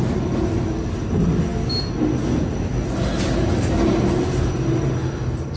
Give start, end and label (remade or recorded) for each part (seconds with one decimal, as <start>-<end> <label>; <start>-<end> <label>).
0.0-5.6 recorded